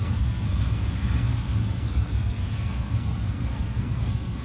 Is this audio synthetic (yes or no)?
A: yes